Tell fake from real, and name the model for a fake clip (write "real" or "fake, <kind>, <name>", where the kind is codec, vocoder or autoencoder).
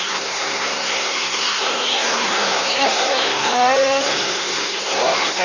fake, codec, SNAC